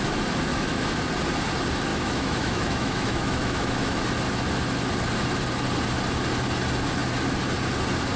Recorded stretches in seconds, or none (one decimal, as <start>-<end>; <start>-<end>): 0.0-0.5; 1.1-1.9; 4.0-8.2